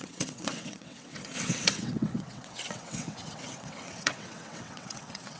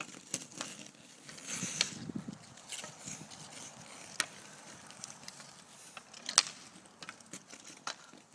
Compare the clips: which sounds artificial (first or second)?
first